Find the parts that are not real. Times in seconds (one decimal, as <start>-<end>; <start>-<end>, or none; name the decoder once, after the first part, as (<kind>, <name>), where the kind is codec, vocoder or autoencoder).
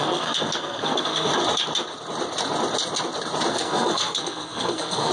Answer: 0.0-1.3 (codec, SNAC); 3.5-5.1